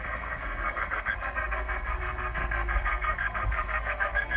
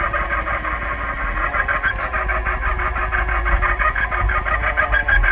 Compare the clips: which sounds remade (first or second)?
first